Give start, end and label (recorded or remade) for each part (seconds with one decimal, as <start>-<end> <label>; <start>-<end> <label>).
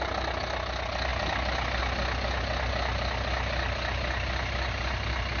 0.0-5.4 recorded